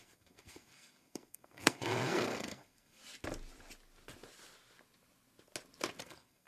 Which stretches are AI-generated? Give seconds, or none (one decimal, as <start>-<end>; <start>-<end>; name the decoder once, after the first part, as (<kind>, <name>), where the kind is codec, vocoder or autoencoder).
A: 0.0-3.0 (codec, SNAC); 6.0-6.5

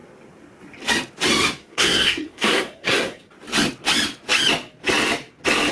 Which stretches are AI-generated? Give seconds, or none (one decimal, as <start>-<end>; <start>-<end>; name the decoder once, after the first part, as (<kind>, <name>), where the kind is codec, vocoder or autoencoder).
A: 1.6-3.3 (codec, SNAC)

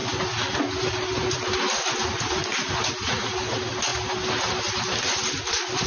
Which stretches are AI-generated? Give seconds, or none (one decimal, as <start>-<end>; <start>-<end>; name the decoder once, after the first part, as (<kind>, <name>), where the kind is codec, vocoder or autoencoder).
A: none

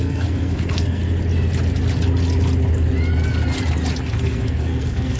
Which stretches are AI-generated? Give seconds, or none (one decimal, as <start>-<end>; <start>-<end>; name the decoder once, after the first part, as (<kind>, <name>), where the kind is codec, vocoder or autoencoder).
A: 0.0-1.0 (codec, SNAC); 4.1-5.2

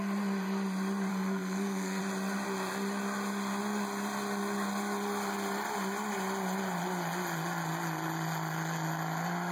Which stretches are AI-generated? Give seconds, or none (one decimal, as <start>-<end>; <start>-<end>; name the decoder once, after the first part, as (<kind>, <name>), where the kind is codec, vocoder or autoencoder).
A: 1.1-2.0 (codec, SNAC)

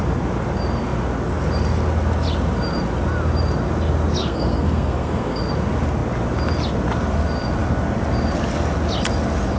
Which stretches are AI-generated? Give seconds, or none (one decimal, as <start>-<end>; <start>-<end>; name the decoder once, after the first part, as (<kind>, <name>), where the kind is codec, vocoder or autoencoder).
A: 4.2-5.4 (codec, SNAC)